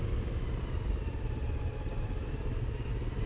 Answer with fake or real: real